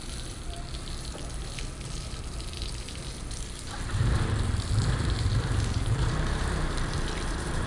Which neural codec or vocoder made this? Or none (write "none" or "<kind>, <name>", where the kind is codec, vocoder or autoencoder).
vocoder, BigVGAN v2